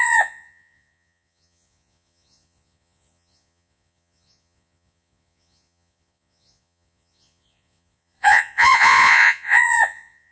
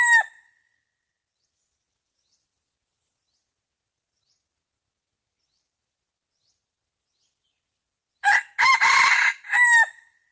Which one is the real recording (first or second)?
second